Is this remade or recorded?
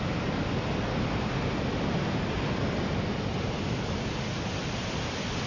recorded